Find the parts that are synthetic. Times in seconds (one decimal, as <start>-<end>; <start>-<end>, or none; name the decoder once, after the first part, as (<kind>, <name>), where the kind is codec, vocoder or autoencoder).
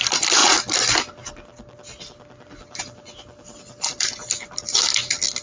3.9-4.8 (vocoder, BigVGAN v2)